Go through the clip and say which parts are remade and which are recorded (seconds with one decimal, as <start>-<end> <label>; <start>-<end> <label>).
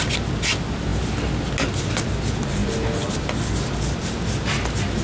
0.0-5.0 recorded